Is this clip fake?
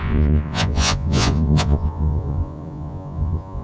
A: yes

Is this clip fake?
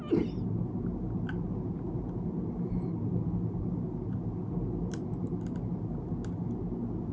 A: no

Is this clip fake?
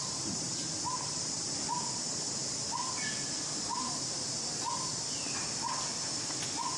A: no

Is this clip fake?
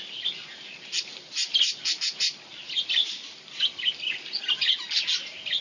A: no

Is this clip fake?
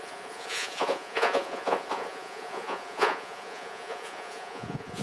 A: yes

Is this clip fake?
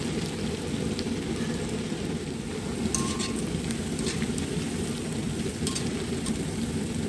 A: no